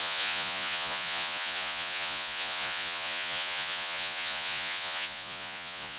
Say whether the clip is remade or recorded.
remade